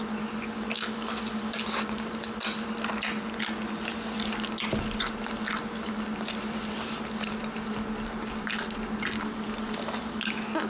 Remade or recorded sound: recorded